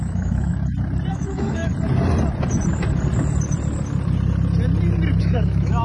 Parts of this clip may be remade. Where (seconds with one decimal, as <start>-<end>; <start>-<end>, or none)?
0.0-0.5; 1.1-1.7; 5.2-5.8